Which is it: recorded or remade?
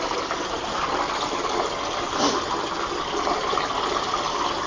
recorded